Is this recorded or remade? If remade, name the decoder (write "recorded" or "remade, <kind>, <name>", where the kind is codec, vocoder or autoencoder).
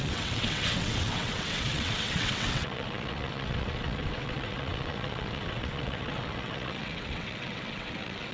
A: remade, vocoder, WaveNeXt